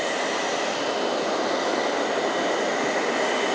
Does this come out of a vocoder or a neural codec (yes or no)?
no